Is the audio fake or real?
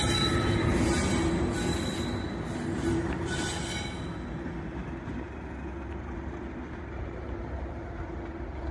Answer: real